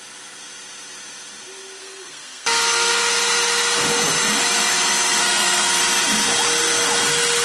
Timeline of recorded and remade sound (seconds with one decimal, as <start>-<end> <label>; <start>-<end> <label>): 0.0-1.8 recorded; 1.8-2.9 remade; 2.9-5.2 recorded; 5.2-5.8 remade; 5.8-7.4 recorded